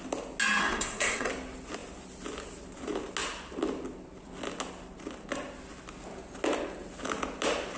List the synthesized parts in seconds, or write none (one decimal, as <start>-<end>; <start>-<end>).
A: 0.6-1.3